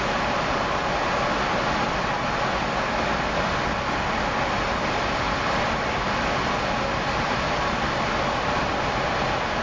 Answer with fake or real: real